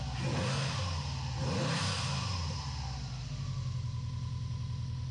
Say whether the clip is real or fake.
real